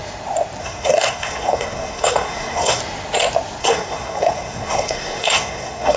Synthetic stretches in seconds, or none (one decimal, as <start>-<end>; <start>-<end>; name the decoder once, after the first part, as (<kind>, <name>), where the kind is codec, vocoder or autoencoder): 0.6-2.8 (codec, SNAC); 3.6-6.0